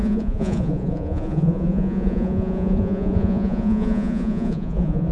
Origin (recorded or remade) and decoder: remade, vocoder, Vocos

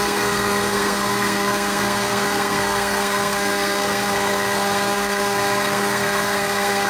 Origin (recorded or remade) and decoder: remade, codec, SNAC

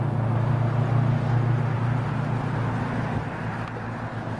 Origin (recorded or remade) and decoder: recorded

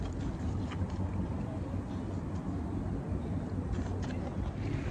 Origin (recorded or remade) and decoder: recorded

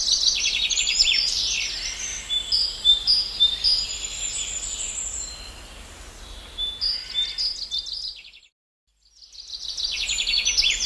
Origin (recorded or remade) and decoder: recorded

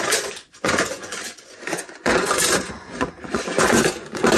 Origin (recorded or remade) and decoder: remade, vocoder, Vocos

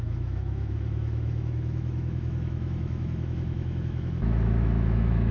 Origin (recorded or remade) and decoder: remade, autoencoder, DAC-VAE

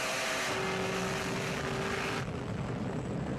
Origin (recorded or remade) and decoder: recorded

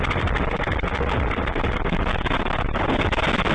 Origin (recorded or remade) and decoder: recorded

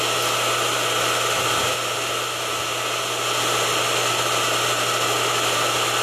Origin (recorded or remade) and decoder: recorded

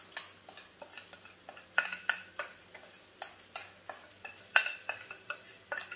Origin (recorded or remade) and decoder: recorded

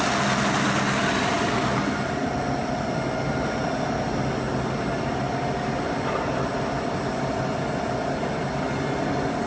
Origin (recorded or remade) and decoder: recorded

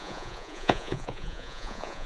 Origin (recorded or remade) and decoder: remade, vocoder, Vocos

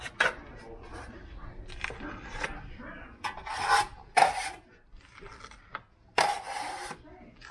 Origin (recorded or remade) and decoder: recorded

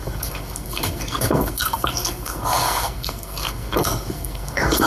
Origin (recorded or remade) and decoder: remade, codec, SNAC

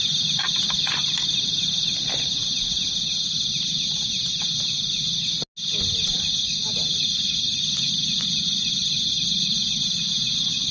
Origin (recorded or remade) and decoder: recorded